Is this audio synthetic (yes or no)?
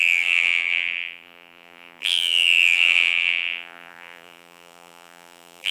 yes